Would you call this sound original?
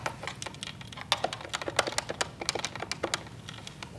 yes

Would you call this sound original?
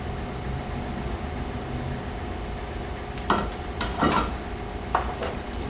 yes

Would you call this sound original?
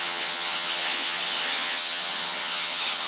no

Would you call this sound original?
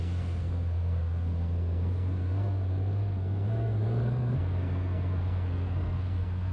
no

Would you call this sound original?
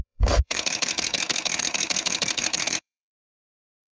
no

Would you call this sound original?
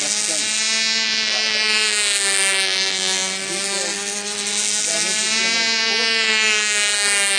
yes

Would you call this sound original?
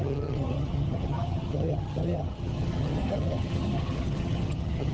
no